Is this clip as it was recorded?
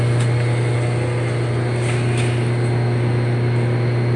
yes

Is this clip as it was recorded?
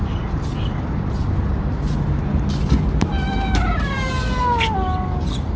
yes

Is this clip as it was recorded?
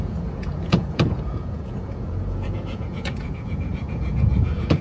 no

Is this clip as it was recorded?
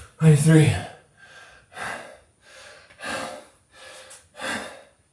yes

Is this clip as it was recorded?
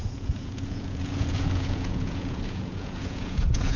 no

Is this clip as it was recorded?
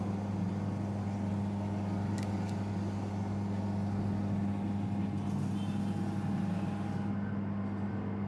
yes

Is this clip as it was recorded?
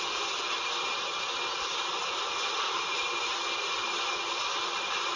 yes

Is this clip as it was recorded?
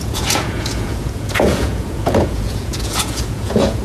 no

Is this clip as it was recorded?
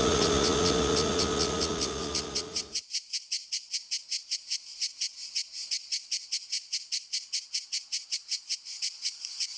no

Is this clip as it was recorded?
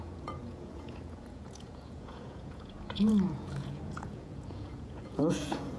no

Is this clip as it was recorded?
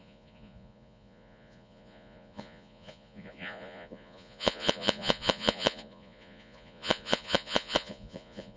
no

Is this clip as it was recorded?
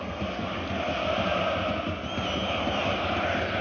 yes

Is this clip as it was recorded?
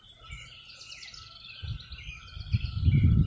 yes